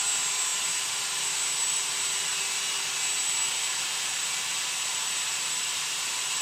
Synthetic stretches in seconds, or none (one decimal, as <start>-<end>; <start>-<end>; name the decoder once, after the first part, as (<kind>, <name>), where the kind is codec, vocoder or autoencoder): 0.0-6.4 (vocoder, BigVGAN v2)